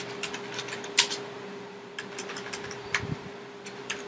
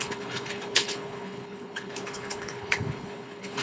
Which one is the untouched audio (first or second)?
first